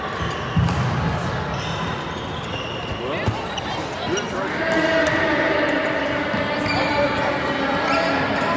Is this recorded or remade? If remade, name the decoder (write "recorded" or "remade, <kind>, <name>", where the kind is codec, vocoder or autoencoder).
recorded